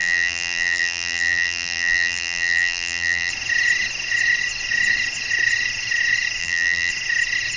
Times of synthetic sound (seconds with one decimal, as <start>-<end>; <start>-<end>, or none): 0.0-3.3; 6.4-6.9